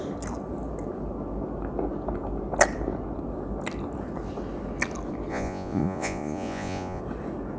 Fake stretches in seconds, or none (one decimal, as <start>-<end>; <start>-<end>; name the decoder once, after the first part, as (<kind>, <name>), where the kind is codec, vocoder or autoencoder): 5.3-7.0 (vocoder, Vocos)